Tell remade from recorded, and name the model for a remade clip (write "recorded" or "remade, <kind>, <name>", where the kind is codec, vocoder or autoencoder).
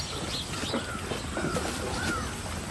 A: recorded